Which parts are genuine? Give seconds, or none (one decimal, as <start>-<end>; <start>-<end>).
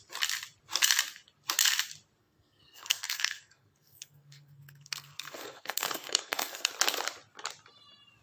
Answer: 0.0-2.2; 6.7-8.2